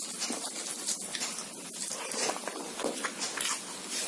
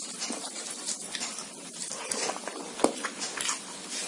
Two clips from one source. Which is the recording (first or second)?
first